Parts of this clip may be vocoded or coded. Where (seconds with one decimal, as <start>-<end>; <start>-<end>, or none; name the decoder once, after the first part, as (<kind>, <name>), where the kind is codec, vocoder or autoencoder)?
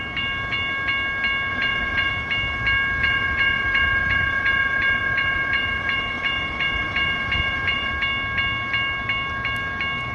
1.5-2.1 (vocoder, Vocos); 3.0-7.9